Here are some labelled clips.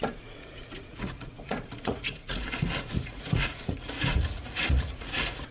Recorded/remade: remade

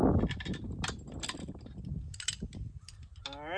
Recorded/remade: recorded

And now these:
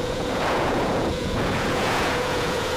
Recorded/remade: remade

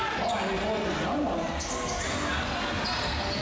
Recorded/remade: recorded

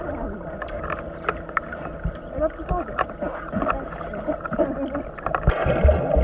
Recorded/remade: recorded